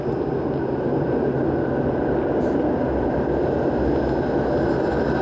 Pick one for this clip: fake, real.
real